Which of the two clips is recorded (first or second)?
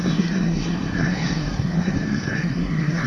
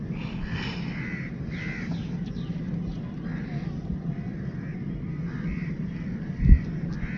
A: second